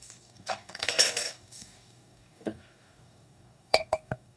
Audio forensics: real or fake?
fake